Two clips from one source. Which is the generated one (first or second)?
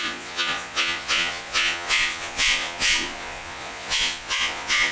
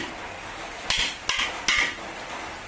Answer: first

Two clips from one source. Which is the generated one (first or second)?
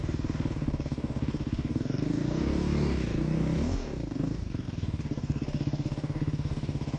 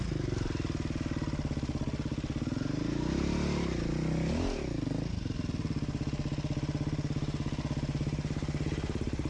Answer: first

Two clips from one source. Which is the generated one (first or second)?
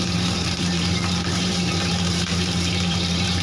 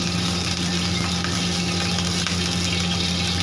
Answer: first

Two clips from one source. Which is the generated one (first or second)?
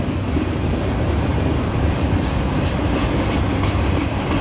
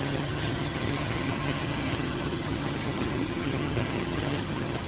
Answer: second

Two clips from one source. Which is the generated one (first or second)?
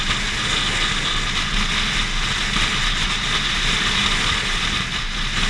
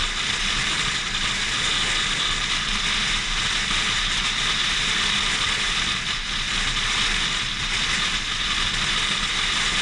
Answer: second